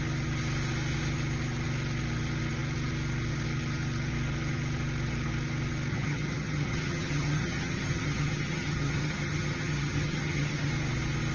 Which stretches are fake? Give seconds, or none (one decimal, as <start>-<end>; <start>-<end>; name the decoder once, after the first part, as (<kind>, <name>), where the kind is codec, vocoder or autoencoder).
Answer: 5.9-10.7 (vocoder, HiFi-GAN)